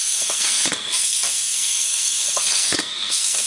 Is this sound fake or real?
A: fake